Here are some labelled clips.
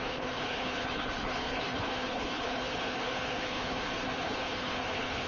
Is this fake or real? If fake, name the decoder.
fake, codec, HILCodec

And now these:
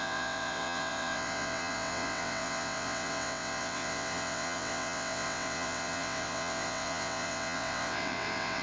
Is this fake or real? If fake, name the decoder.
fake, vocoder, WaveNeXt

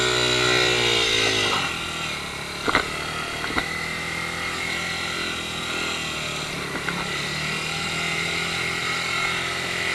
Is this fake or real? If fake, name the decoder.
real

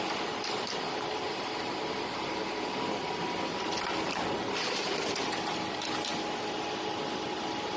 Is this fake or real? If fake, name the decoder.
real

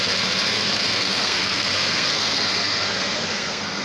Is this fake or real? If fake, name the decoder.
fake, codec, SNAC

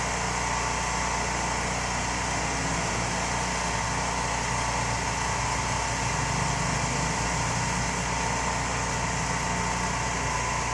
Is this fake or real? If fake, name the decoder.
real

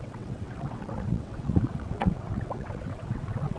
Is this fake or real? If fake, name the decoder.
fake, vocoder, WaveNeXt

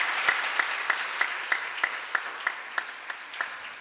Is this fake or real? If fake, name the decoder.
real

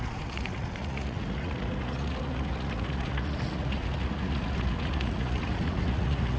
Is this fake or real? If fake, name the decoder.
fake, vocoder, Vocos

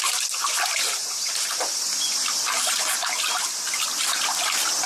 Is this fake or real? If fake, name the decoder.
fake, vocoder, BigVGAN v2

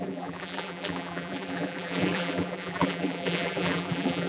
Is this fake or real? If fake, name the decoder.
fake, vocoder, BigVGAN v2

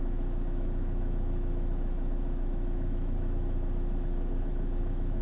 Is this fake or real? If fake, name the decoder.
fake, autoencoder, DAC-VAE